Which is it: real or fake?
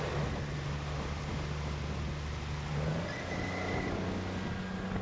real